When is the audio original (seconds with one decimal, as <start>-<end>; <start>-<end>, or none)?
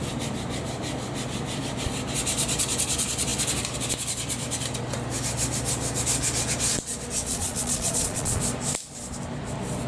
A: 0.0-7.3; 8.4-9.9